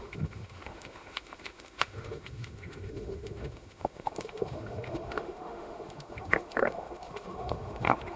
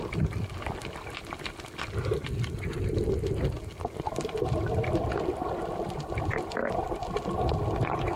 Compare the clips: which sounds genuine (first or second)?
second